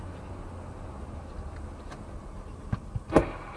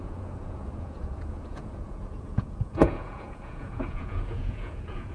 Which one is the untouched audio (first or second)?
first